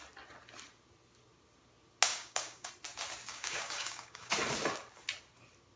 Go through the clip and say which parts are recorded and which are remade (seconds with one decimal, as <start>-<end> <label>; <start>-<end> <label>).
0.0-2.1 recorded; 2.1-2.7 remade; 2.7-3.3 recorded; 3.3-4.3 remade; 4.3-5.8 recorded